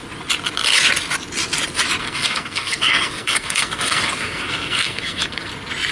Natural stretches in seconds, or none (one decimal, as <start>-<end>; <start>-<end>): 0.0-2.0; 5.5-5.9